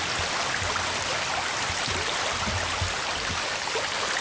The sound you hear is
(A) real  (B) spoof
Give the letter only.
A